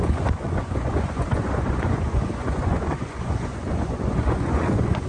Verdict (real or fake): fake